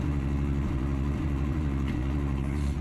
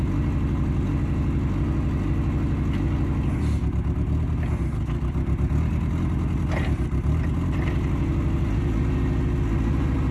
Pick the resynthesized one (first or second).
first